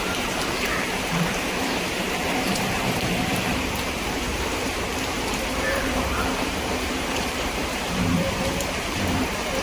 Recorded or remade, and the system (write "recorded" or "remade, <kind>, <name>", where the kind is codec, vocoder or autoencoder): remade, vocoder, BigVGAN v2